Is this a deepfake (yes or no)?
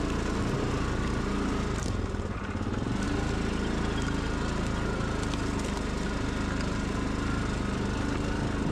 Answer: no